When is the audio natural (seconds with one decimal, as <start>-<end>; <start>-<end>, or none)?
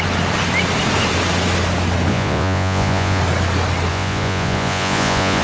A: 0.0-2.1; 3.2-3.9